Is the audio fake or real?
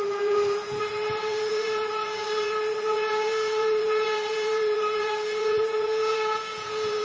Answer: fake